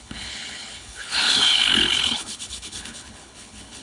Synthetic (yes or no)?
yes